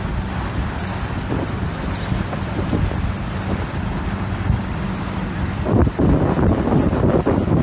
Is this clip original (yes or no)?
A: yes